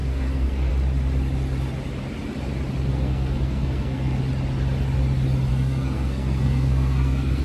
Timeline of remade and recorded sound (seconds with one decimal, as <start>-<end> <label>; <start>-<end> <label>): 0.0-0.7 remade; 0.7-2.9 recorded; 2.9-4.2 remade; 4.2-5.5 recorded; 5.5-7.4 remade